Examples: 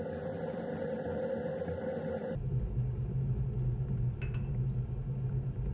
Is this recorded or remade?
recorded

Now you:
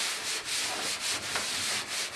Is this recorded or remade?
recorded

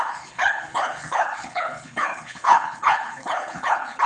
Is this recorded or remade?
remade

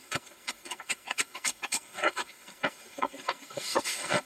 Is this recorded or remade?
remade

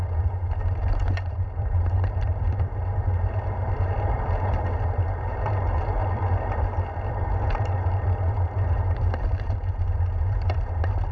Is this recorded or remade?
remade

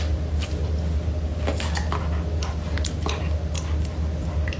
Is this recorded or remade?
recorded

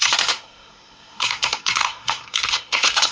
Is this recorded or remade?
remade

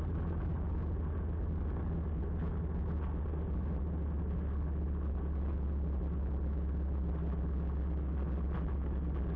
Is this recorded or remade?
recorded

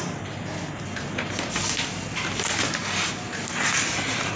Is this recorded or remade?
recorded